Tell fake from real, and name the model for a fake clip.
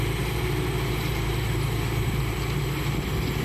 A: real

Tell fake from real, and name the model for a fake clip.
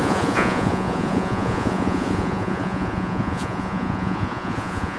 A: fake, vocoder, Vocos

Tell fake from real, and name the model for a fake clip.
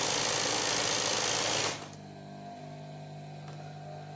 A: real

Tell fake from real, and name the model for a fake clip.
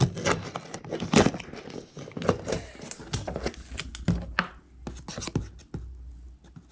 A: real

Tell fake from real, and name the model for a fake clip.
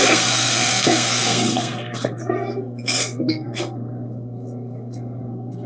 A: fake, codec, SNAC